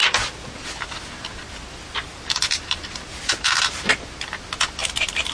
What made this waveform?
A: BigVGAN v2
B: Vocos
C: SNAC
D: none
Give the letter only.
D